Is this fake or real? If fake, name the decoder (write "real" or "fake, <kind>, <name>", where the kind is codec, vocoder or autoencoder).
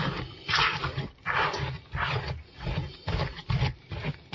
real